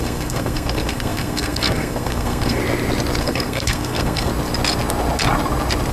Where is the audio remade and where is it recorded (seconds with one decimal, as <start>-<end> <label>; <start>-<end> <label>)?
0.0-2.6 remade; 2.6-3.2 recorded; 3.2-4.3 remade; 4.3-5.9 recorded